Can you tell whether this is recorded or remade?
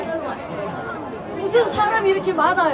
recorded